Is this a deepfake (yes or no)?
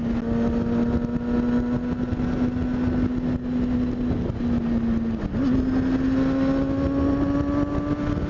no